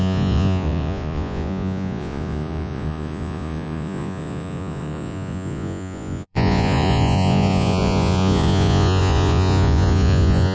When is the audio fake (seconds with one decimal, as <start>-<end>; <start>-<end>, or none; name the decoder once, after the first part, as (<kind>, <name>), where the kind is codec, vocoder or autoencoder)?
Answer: 0.0-10.5 (vocoder, Vocos)